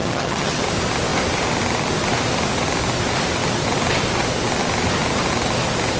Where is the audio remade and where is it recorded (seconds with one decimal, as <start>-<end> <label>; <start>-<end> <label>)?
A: 0.0-0.6 remade; 0.6-6.0 recorded